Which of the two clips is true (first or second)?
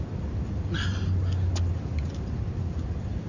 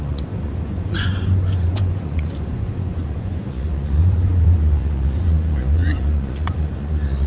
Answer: first